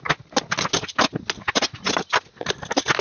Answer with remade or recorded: recorded